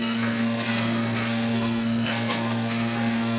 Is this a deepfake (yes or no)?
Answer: yes